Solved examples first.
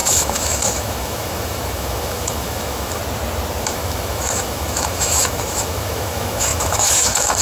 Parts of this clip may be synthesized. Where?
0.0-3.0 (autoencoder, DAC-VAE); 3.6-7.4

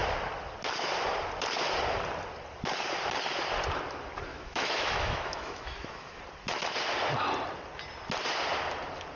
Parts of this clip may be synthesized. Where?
4.3-6.2 (autoencoder, DAC-VAE)

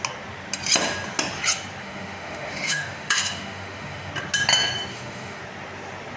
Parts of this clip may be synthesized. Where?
1.8-4.1 (autoencoder, DAC-VAE); 4.9-5.4

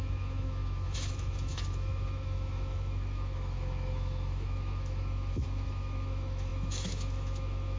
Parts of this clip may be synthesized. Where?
0.0-7.8 (autoencoder, DAC-VAE)

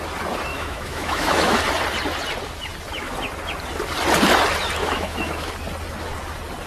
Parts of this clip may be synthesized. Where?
0.5-1.6 (autoencoder, DAC-VAE); 4.8-5.5